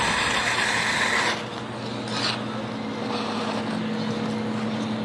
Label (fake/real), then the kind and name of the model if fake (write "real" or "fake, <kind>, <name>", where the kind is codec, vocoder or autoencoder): real